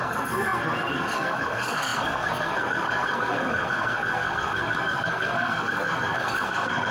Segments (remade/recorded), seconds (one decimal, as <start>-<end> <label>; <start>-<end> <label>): 0.0-6.9 remade